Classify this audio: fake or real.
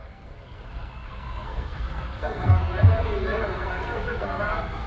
fake